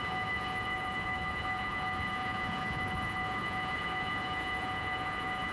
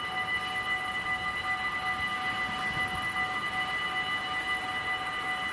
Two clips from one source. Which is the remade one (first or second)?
first